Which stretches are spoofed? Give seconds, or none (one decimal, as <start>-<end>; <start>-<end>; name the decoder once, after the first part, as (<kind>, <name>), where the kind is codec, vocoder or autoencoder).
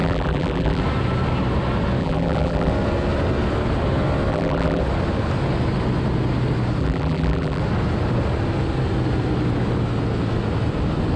0.0-0.8 (vocoder, BigVGAN v2); 2.0-2.7; 4.3-4.8; 6.8-7.6